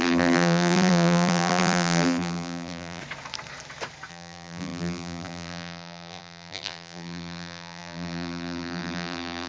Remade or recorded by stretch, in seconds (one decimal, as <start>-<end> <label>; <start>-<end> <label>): 0.0-3.0 remade; 3.0-4.1 recorded; 4.1-9.5 remade